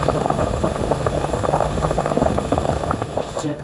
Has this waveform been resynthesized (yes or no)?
yes